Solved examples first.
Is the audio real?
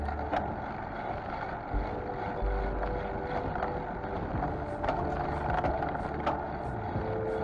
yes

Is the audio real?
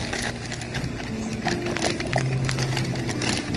yes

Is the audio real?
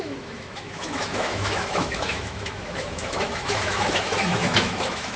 no